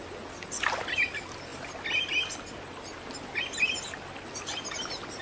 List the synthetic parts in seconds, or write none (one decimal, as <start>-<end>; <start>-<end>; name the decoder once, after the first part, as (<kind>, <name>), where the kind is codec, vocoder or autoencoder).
none